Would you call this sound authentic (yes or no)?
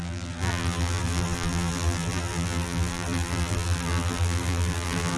no